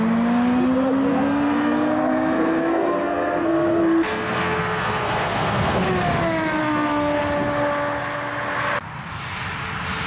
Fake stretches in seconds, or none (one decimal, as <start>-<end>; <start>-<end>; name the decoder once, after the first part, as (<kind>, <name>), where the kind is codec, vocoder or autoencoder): 1.1-5.8 (codec, SNAC); 6.6-7.2